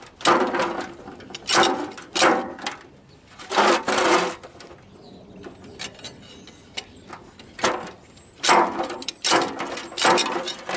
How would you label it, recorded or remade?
recorded